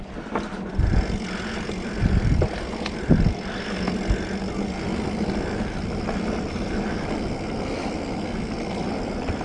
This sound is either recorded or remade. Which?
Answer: recorded